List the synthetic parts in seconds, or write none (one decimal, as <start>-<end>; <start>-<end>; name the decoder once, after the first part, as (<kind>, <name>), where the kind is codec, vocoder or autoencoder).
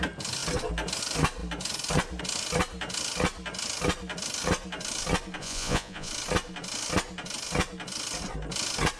5.4-6.1 (vocoder, Vocos)